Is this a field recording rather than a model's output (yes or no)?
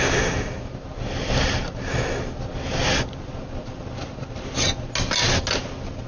yes